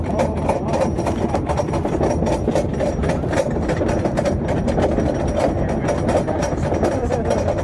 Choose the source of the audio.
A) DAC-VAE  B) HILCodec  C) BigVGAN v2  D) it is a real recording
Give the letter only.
D